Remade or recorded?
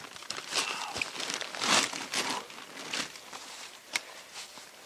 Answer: recorded